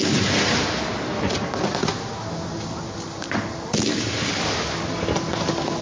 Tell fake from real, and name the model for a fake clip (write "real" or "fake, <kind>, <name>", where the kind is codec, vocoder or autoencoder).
real